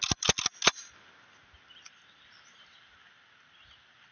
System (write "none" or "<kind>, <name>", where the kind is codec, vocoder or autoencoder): none